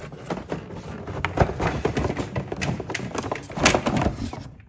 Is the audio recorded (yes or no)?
yes